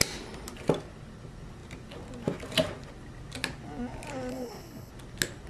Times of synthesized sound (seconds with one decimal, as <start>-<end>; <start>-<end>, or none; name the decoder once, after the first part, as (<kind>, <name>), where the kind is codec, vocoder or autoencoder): 4.3-4.9 (codec, HILCodec)